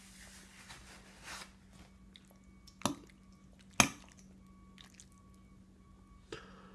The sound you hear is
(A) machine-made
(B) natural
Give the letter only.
B